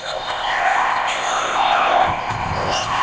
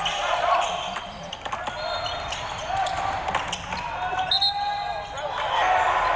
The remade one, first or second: first